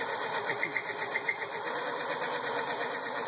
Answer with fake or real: fake